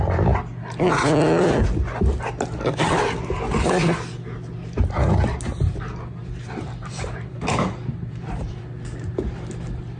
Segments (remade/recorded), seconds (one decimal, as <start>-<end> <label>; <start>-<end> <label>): 0.0-6.2 recorded; 6.2-8.6 remade; 8.6-10.0 recorded